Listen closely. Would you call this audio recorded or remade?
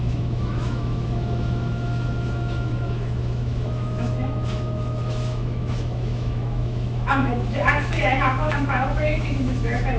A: remade